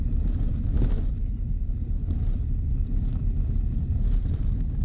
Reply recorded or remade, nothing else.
recorded